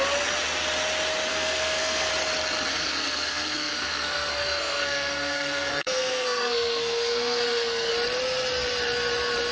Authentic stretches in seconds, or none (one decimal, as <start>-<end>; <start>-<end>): 0.0-1.3; 2.1-2.7; 7.9-9.5

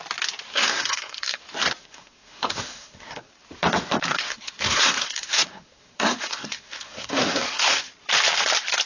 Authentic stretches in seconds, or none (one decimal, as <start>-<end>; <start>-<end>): 0.0-0.5; 1.4-1.8; 3.3-4.1; 7.9-8.9

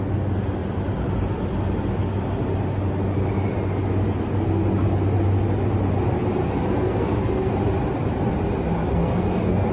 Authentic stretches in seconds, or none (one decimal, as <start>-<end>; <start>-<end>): 0.0-6.4; 7.5-8.8

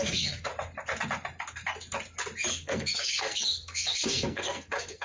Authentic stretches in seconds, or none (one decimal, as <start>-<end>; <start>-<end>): 0.5-2.5

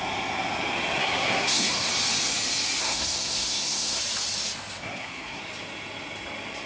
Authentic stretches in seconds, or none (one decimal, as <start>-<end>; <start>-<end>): 0.0-1.0; 1.9-2.8; 4.0-4.8; 5.4-6.7

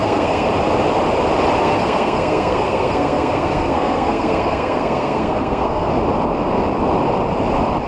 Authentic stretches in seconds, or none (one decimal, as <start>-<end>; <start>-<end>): 0.5-1.6; 5.9-7.9

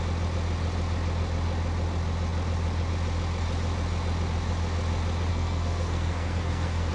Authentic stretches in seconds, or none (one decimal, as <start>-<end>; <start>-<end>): 0.0-5.3